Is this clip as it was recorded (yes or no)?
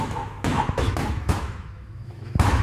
no